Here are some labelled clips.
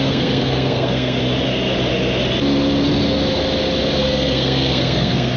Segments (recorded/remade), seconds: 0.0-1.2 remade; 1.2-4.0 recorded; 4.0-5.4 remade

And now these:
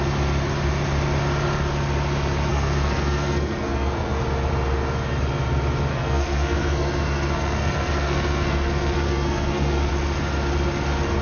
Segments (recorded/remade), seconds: 0.0-2.5 recorded; 2.5-4.2 remade; 4.2-5.9 recorded; 5.9-9.9 remade; 9.9-11.2 recorded

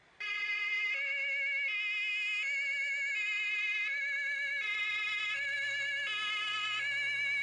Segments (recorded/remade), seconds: 0.0-7.4 recorded

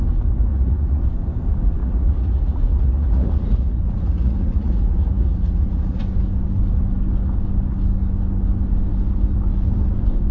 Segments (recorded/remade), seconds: 0.0-0.5 recorded; 0.5-1.0 remade; 1.0-1.8 recorded; 1.8-6.0 remade; 6.0-10.3 recorded

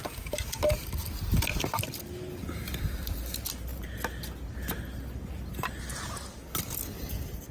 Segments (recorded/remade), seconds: 0.0-7.5 recorded

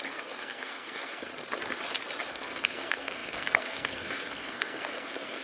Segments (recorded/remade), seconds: 0.0-1.3 remade; 1.3-2.3 recorded; 2.3-5.4 remade

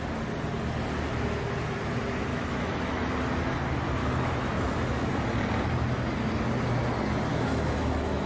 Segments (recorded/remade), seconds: 0.0-2.3 recorded; 2.3-3.1 remade; 3.1-4.0 recorded; 4.0-5.1 remade; 5.1-7.3 recorded; 7.3-8.3 remade